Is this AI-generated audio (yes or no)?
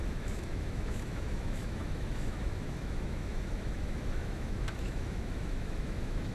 yes